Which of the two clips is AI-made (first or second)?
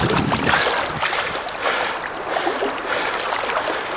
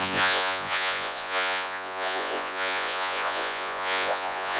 second